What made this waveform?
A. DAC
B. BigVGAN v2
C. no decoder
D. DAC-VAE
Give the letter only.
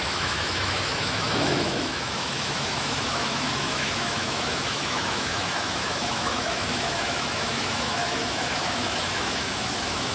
D